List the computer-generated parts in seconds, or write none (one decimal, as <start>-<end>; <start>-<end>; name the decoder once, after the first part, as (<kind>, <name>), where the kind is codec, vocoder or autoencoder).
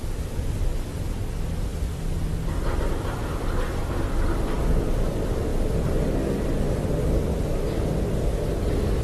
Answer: 0.0-7.3 (vocoder, BigVGAN v2); 8.1-9.0